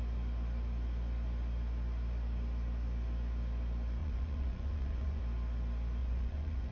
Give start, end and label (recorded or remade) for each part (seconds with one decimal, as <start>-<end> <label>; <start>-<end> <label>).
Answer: 0.0-4.0 recorded; 4.0-5.2 remade; 5.2-6.0 recorded; 6.0-6.7 remade